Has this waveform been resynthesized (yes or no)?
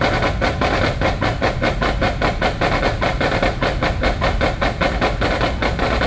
no